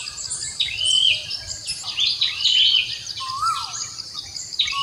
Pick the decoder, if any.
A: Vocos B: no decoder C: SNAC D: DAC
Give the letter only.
B